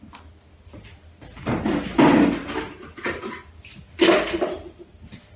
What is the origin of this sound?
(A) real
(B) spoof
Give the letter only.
A